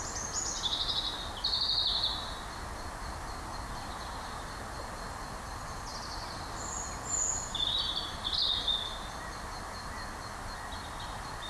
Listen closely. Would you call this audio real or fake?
real